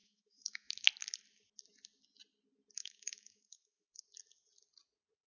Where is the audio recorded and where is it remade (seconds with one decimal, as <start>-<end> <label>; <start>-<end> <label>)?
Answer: 0.0-0.7 remade; 0.7-2.8 recorded; 2.8-4.0 remade; 4.0-5.3 recorded